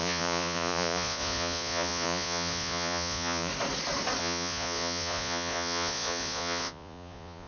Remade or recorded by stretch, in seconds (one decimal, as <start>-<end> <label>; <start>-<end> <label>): 0.0-3.5 remade; 3.5-4.2 recorded; 4.2-7.5 remade